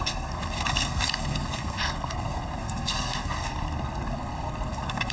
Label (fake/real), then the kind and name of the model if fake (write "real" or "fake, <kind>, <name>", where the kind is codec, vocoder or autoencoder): fake, codec, SNAC